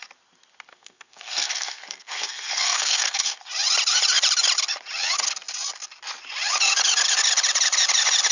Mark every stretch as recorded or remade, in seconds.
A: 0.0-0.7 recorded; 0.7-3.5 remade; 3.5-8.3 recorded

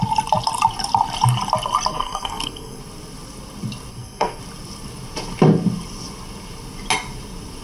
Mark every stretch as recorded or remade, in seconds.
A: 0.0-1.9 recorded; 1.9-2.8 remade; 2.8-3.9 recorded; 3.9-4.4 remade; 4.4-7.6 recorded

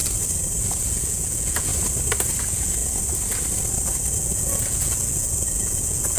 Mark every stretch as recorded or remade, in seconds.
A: 0.0-0.6 recorded; 0.6-1.7 remade; 1.7-2.4 recorded; 2.4-2.8 remade; 2.8-4.2 recorded; 4.2-6.2 remade